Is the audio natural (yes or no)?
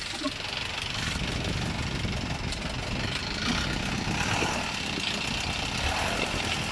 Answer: yes